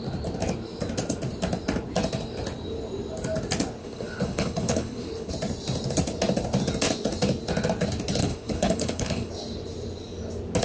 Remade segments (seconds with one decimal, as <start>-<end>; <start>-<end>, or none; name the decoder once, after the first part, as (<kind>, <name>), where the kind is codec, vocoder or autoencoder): 3.8-5.3 (codec, HILCodec); 8.2-9.3

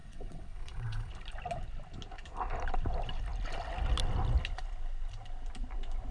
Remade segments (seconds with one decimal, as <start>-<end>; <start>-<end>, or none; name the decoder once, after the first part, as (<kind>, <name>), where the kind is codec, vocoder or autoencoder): 0.0-1.1 (vocoder, WaveNeXt)

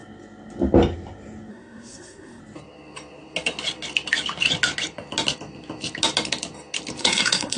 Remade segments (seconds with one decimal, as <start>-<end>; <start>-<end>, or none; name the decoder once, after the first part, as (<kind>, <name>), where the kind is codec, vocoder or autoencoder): 1.5-2.4 (codec, SNAC); 7.0-7.6

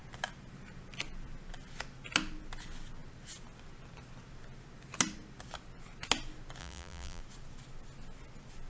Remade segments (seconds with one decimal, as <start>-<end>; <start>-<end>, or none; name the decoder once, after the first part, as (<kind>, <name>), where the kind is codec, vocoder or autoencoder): 6.6-7.2 (vocoder, BigVGAN v2)

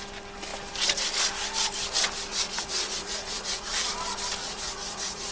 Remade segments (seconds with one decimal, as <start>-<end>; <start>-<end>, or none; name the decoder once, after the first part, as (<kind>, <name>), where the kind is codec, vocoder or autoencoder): 2.3-3.9 (vocoder, Vocos); 4.4-5.3

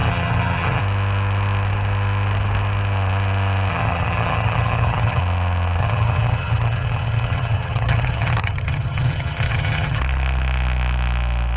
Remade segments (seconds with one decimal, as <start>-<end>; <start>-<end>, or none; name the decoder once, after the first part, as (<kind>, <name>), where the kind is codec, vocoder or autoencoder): 0.0-0.8 (vocoder, HiFi-GAN); 3.7-5.2; 5.8-10.0